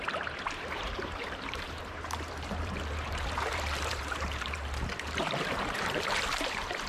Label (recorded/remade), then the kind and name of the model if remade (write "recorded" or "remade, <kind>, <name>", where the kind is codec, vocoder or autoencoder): remade, vocoder, BigVGAN v2